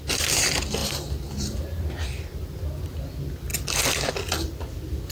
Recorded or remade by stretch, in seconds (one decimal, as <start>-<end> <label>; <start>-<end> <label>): 0.0-0.8 recorded; 0.8-2.6 remade; 2.6-5.1 recorded